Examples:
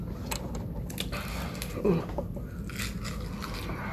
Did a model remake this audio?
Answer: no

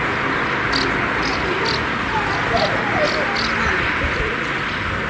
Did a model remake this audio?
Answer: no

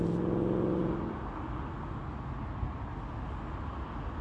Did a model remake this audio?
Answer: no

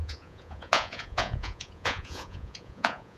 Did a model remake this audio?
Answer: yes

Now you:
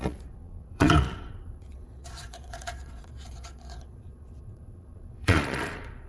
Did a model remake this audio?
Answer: yes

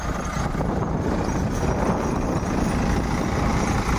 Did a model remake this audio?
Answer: no